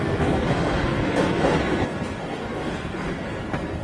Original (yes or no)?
no